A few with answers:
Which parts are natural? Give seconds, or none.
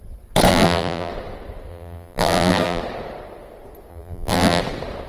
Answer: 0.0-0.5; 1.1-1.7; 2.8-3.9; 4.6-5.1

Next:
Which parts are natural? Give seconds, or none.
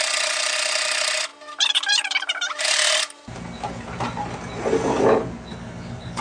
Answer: 0.0-5.5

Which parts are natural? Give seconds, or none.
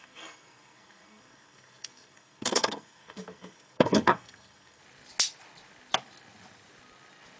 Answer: 4.8-7.4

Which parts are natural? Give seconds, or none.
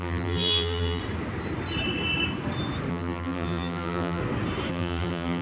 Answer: 1.0-2.9; 4.2-4.7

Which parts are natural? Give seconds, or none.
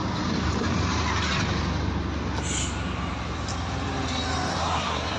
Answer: 0.0-4.5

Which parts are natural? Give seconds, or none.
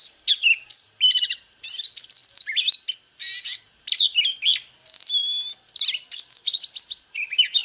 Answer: 0.0-7.6